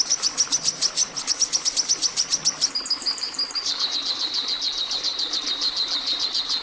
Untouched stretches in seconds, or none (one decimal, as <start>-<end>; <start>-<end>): 0.0-6.6